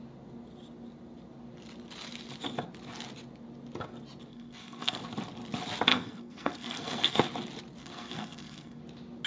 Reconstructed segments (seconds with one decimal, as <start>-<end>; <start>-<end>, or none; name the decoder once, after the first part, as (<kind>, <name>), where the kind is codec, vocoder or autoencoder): 4.3-5.0 (codec, SNAC); 5.9-7.2; 7.8-8.8